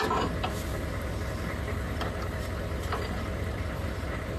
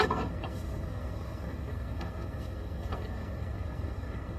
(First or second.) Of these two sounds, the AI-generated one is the second